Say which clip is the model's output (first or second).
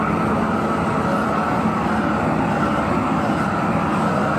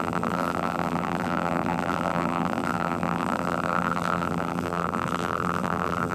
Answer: second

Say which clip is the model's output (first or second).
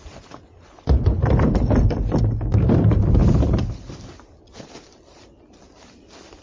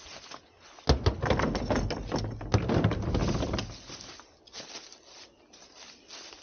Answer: first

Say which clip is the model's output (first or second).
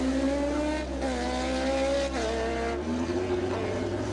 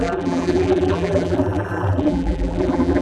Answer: second